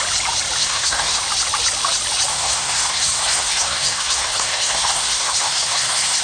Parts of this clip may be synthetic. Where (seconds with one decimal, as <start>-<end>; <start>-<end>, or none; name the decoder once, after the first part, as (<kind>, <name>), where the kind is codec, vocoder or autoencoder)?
0.6-1.2 (codec, SNAC); 2.3-6.2